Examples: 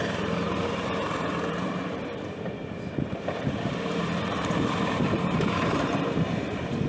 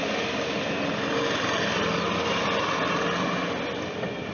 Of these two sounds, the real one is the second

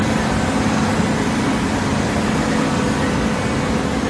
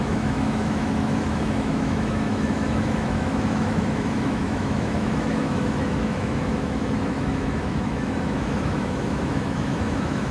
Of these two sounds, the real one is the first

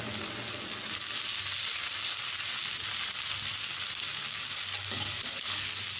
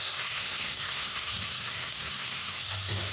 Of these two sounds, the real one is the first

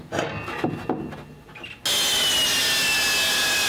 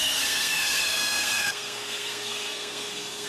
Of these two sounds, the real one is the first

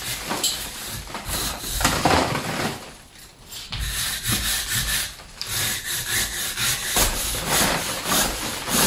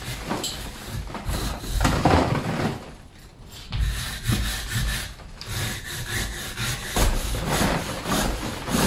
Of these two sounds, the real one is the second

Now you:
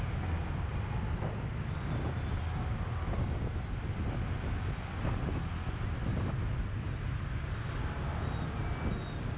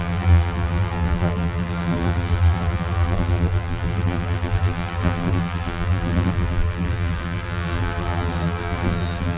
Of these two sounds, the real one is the first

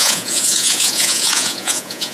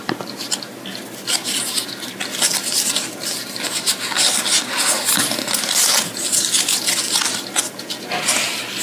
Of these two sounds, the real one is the second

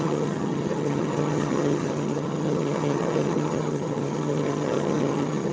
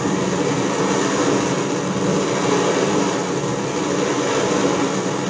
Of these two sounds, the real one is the second